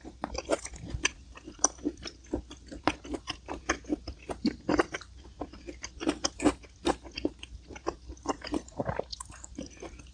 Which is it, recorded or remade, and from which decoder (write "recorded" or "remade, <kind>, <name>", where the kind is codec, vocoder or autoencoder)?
recorded